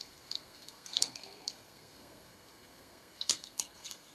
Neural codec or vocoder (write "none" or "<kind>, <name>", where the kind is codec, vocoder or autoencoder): codec, SNAC